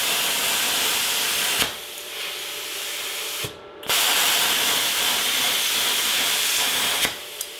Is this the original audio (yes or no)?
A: no